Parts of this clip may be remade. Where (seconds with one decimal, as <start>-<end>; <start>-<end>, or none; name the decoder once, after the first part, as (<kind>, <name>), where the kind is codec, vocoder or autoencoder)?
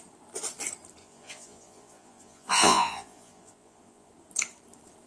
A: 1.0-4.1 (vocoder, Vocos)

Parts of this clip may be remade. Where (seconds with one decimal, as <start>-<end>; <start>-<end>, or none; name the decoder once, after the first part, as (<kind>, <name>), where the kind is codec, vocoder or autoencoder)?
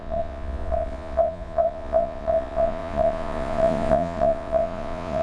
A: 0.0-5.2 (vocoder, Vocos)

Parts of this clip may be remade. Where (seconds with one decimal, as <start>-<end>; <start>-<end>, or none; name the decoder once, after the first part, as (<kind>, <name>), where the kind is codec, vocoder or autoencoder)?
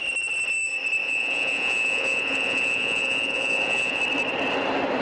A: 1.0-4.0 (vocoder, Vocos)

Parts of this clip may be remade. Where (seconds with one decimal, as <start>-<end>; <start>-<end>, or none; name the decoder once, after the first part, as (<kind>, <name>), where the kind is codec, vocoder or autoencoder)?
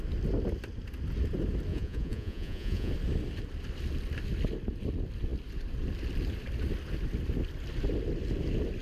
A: 1.7-2.9 (vocoder, Vocos)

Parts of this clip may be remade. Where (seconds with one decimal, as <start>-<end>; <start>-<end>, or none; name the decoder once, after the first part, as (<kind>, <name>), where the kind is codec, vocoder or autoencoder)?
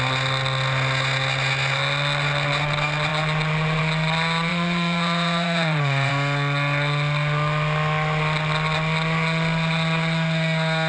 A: 4.5-6.1 (vocoder, Vocos)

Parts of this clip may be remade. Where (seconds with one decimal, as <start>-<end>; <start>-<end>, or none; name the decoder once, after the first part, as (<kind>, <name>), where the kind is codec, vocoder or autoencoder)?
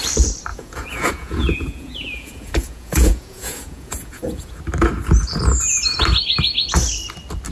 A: 0.5-4.6 (vocoder, Vocos)